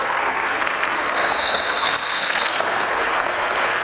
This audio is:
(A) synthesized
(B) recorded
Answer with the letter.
A